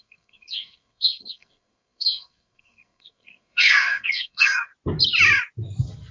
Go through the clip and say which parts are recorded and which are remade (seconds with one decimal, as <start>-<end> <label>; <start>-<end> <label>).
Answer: 0.0-4.7 remade; 4.7-6.1 recorded